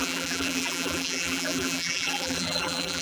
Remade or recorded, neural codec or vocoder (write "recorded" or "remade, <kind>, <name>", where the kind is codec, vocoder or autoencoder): remade, vocoder, BigVGAN v2